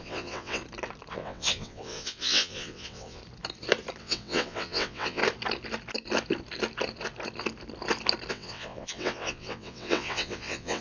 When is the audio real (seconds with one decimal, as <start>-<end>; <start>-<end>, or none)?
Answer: 0.6-1.1; 3.2-4.0; 5.2-8.3